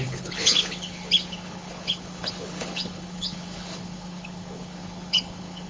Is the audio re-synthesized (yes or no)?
yes